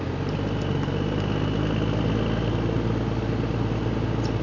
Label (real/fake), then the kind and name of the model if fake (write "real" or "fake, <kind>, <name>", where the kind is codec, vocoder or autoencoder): real